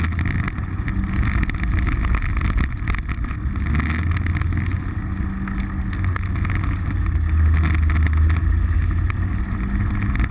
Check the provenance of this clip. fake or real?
real